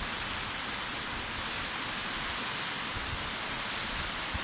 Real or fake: fake